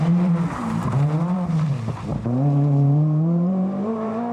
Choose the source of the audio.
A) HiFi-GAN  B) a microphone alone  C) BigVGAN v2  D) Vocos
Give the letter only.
C